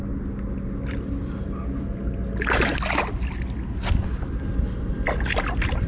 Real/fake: real